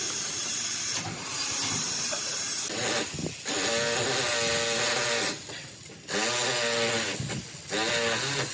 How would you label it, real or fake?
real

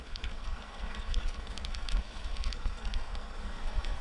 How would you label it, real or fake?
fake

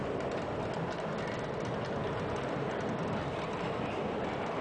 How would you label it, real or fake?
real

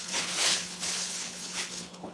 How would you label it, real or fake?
fake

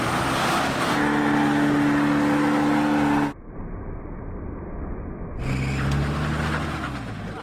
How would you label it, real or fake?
real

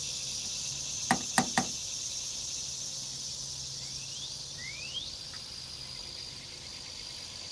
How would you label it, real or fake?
real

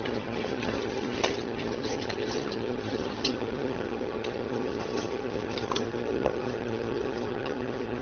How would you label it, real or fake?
fake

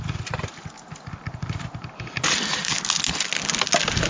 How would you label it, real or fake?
real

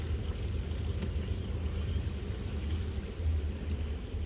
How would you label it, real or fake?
real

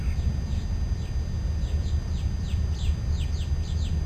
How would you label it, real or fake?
real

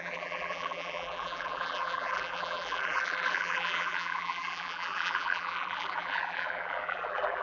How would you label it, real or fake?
fake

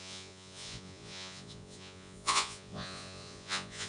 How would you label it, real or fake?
fake